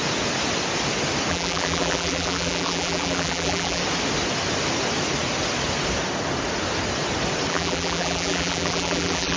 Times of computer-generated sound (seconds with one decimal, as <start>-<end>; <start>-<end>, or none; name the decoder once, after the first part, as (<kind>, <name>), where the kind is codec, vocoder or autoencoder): 1.3-3.8 (vocoder, BigVGAN v2); 7.5-9.4